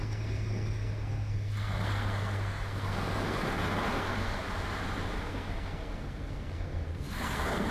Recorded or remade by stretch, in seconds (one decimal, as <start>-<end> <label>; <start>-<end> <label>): 0.0-4.4 remade; 4.4-5.2 recorded; 5.2-7.7 remade